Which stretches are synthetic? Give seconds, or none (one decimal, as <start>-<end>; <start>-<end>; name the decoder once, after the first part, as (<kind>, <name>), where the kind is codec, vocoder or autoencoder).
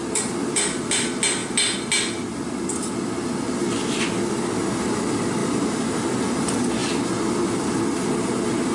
5.4-6.2 (vocoder, BigVGAN v2)